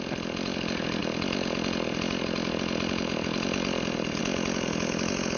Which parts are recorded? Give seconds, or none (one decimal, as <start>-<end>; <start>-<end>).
0.0-5.4